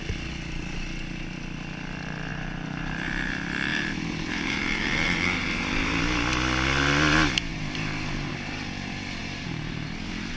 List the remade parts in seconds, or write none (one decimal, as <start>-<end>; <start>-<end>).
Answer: 2.3-3.3; 3.7-6.0; 7.5-8.3; 9.2-10.4